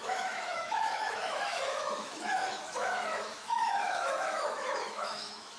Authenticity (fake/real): fake